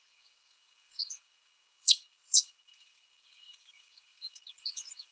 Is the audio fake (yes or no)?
yes